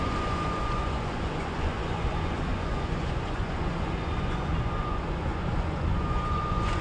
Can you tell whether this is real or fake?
fake